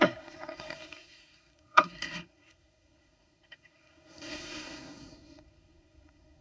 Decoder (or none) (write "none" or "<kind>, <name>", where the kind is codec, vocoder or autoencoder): codec, SNAC